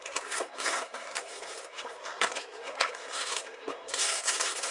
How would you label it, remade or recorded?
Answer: remade